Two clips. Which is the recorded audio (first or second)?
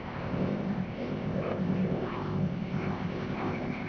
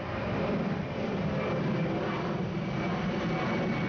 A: second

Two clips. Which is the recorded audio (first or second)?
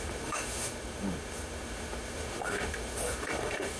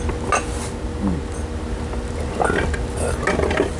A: second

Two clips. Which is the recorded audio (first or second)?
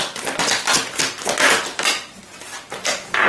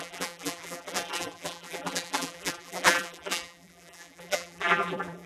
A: first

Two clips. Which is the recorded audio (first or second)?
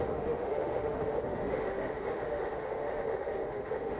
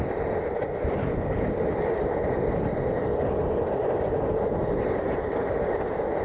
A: second